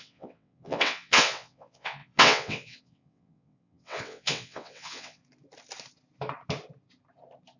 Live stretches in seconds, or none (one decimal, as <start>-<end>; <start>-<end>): 5.2-7.6